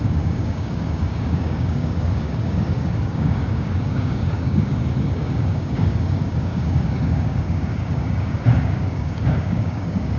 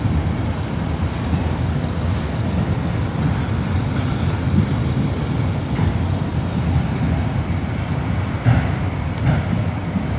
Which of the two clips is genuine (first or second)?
second